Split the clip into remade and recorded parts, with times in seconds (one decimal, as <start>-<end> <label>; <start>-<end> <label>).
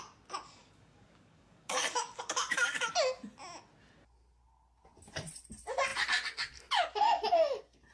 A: 0.0-0.6 recorded; 0.6-2.9 remade; 2.9-7.9 recorded